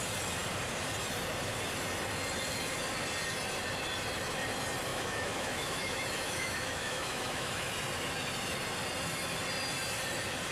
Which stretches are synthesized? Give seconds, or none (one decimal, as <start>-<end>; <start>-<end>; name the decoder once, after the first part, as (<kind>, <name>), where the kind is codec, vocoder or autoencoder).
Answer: 4.9-7.7 (autoencoder, DAC-VAE)

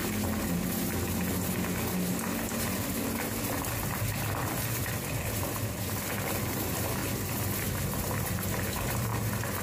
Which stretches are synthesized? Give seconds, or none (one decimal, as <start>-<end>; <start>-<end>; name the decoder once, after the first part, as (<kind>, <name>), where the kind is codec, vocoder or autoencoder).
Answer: 4.8-7.0 (vocoder, BigVGAN v2); 8.0-9.1

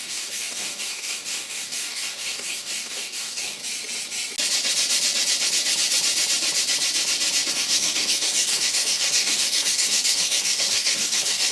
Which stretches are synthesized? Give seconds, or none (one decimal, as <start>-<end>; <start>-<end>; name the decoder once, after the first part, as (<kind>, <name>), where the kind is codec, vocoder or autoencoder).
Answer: 0.0-3.6 (codec, DAC); 7.5-11.5

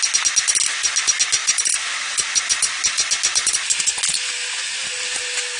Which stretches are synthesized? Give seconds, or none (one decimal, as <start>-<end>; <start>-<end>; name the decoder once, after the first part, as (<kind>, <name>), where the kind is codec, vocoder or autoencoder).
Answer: none

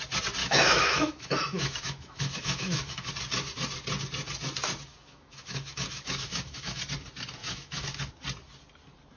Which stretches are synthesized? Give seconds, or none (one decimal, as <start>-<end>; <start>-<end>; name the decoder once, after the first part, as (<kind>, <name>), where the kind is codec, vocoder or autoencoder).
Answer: 0.4-3.1 (autoencoder, DAC-VAE); 4.9-6.8; 7.4-8.1

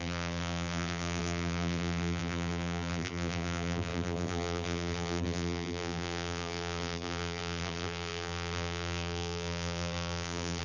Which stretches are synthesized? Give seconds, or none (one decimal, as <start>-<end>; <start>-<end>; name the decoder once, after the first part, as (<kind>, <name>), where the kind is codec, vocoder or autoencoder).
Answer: 0.0-10.6 (vocoder, BigVGAN v2)

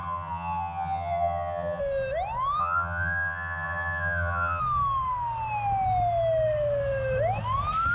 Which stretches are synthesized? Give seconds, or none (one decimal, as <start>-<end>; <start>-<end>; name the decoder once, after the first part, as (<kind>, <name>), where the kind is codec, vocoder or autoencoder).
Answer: 0.0-1.8 (vocoder, HiFi-GAN); 2.6-4.6